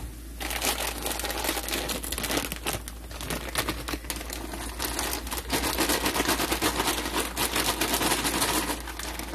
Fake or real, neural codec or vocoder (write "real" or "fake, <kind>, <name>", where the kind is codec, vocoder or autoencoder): real